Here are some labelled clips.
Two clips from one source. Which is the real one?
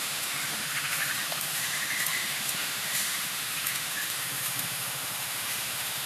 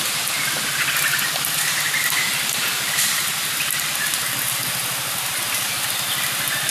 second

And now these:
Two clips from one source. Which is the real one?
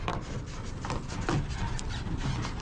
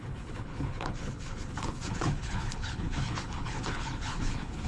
first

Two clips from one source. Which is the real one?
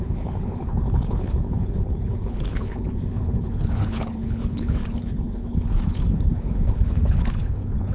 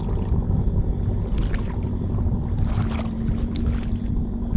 second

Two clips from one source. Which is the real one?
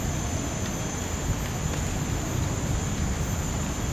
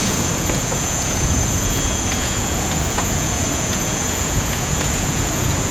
first